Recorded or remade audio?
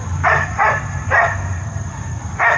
remade